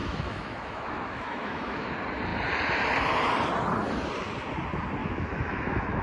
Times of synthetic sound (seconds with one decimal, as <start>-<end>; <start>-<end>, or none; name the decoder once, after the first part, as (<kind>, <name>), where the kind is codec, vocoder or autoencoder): 0.0-1.9 (autoencoder, DAC-VAE); 5.0-6.0